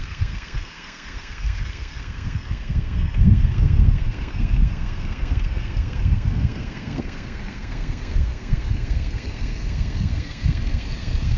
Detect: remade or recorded remade